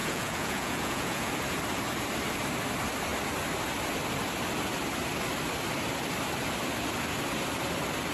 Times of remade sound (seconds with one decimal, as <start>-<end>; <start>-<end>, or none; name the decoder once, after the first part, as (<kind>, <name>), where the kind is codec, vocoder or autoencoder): 0.0-1.3 (vocoder, Vocos)